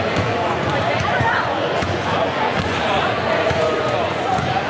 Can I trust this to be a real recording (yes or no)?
no